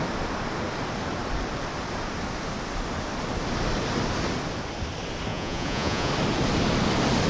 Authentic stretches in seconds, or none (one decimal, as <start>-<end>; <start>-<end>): 0.0-5.3; 6.1-7.3